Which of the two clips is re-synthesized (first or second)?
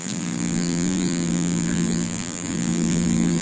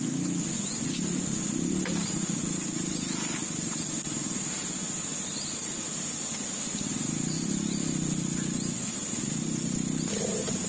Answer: first